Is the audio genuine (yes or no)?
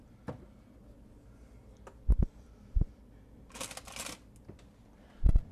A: yes